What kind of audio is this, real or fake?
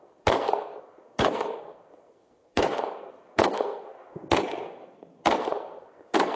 fake